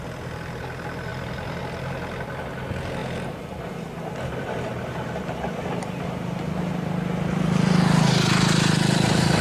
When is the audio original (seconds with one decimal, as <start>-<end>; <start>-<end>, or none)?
0.0-1.1; 1.6-3.0; 3.7-9.4